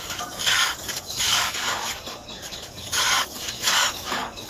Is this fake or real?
fake